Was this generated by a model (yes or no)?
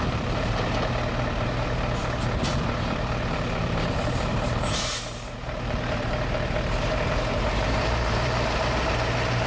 yes